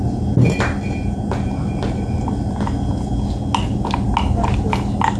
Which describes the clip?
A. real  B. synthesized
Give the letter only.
A